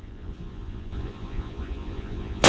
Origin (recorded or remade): remade